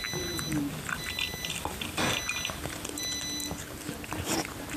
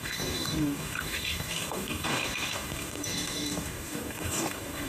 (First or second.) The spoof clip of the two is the second